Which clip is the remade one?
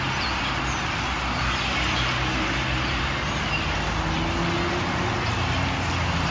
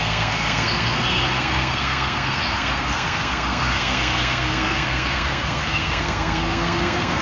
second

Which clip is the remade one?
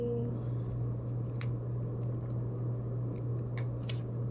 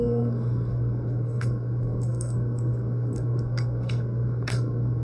second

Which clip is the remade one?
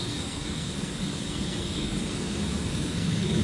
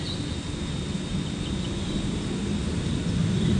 first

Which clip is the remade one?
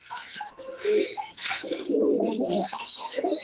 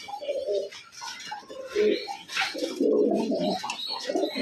first